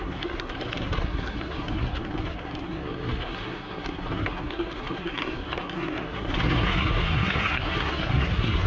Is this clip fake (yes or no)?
yes